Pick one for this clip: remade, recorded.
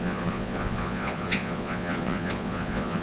remade